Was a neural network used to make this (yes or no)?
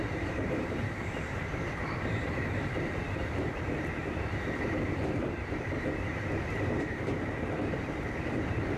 yes